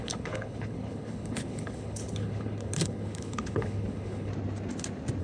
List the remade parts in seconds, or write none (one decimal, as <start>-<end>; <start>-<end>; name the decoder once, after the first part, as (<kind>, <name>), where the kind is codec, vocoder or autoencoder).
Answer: 0.0-4.3 (codec, HILCodec)